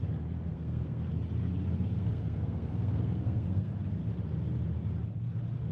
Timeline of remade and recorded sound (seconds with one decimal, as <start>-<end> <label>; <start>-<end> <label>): 0.0-0.5 recorded; 0.5-1.1 remade; 1.1-1.6 recorded; 1.6-3.7 remade; 3.7-5.7 recorded